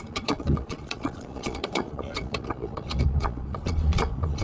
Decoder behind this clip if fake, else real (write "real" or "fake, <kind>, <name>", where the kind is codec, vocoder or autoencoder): fake, vocoder, Vocos